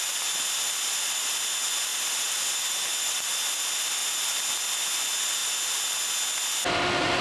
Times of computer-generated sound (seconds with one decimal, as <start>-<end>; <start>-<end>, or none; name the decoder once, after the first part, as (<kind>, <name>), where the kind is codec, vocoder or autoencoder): 1.9-3.3 (vocoder, BigVGAN v2)

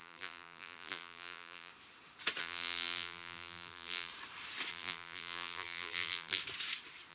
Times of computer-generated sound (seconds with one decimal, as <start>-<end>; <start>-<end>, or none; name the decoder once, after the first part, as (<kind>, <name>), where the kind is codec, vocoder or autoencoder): 0.0-1.7 (vocoder, BigVGAN v2); 2.4-4.1; 4.7-6.4

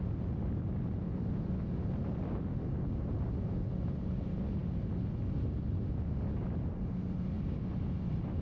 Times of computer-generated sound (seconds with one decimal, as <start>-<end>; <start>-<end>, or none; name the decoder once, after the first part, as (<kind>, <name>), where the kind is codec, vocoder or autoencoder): none

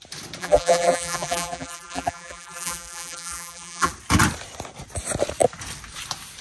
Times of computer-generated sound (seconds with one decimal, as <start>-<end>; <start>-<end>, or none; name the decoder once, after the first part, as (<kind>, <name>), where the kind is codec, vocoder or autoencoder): 0.4-3.9 (vocoder, BigVGAN v2)

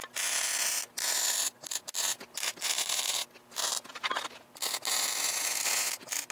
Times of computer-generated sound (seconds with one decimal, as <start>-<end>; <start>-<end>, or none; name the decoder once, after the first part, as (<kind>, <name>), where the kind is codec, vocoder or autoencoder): 0.0-0.9 (vocoder, BigVGAN v2)

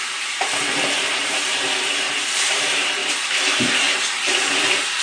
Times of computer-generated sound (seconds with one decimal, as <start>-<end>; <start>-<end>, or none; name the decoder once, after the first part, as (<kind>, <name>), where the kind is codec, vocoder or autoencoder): 0.0-3.0 (vocoder, BigVGAN v2); 3.7-5.0

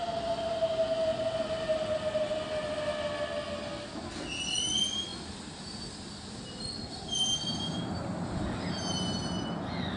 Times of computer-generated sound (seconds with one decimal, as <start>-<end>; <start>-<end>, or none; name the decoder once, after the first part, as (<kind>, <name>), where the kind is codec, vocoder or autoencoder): 1.1-2.8 (vocoder, BigVGAN v2)